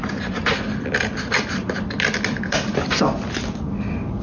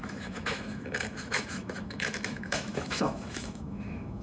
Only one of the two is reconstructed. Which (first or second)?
second